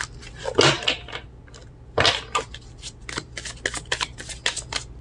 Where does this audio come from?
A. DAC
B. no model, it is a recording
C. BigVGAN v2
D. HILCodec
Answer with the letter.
B